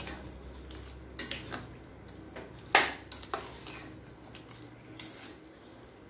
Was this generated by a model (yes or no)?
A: no